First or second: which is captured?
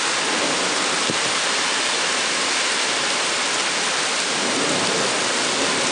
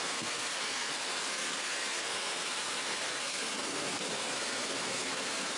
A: first